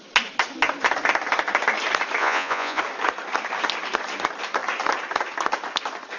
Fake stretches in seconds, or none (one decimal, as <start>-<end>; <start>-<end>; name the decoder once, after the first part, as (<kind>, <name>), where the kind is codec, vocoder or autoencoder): 2.2-2.8 (vocoder, Vocos)